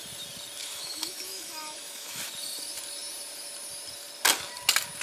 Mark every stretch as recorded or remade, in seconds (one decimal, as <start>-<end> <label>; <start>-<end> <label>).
0.0-0.6 recorded; 0.6-2.2 remade; 2.2-5.0 recorded